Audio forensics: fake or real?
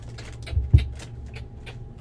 real